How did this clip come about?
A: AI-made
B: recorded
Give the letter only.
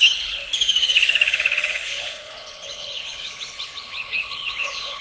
A